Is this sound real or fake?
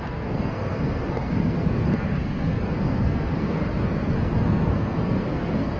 fake